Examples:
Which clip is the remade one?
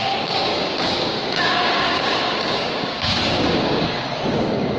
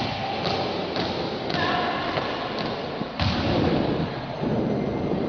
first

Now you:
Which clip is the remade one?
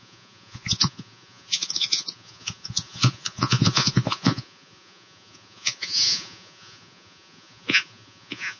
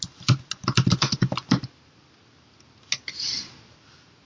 first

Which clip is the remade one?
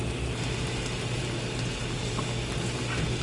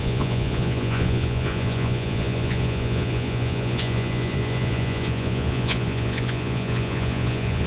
second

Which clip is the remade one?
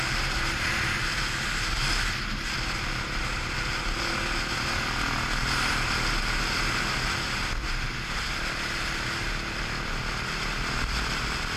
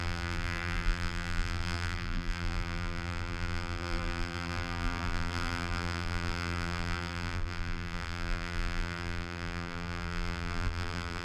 second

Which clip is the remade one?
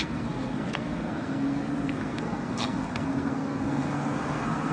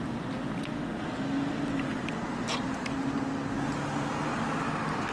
first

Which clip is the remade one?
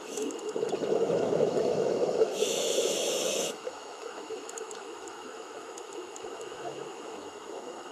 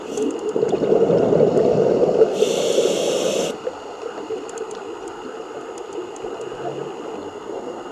first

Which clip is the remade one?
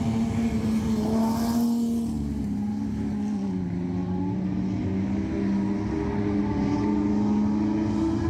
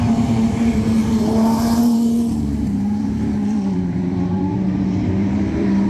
second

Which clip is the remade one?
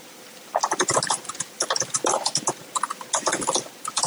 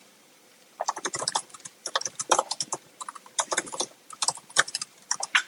second